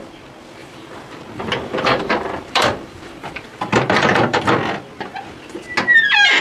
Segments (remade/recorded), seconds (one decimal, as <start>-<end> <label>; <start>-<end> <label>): 0.0-0.6 recorded; 0.6-4.4 remade; 4.4-6.4 recorded